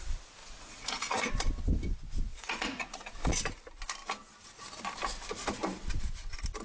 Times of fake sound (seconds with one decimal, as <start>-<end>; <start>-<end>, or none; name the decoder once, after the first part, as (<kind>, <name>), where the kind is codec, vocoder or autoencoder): 0.4-1.3 (vocoder, Vocos); 2.3-3.1